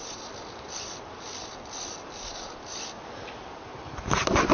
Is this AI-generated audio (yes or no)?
no